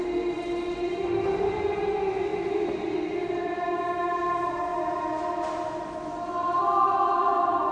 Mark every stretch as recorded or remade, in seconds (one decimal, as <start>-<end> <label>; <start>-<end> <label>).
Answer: 0.0-7.7 recorded